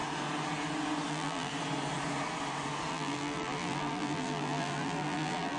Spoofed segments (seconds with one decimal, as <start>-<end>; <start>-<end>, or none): 1.1-1.5; 2.9-5.6